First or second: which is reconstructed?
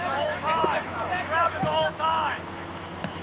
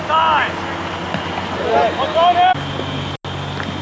first